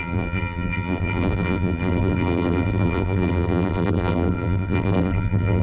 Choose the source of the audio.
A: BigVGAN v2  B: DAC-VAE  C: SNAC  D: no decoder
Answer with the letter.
A